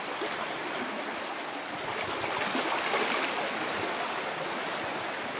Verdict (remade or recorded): recorded